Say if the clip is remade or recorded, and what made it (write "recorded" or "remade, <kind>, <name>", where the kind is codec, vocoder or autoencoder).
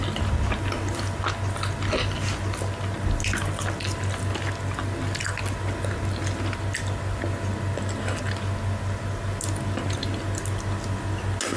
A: recorded